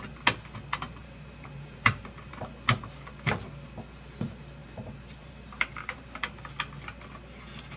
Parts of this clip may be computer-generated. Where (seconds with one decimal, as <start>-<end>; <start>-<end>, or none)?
1.0-2.3; 4.6-6.3